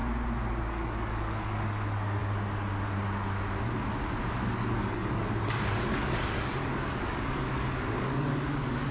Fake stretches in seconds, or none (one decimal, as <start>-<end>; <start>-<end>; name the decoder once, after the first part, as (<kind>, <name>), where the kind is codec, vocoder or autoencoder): 0.6-2.2 (codec, DAC); 4.3-8.9